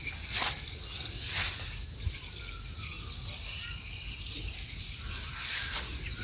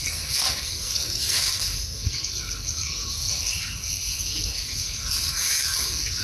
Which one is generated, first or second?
second